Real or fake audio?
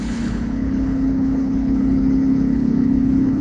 fake